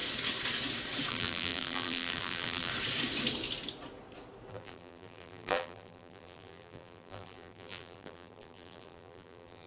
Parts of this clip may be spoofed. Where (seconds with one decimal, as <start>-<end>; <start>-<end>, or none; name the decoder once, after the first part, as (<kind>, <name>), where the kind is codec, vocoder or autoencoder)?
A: 1.1-2.7 (vocoder, BigVGAN v2); 4.5-9.7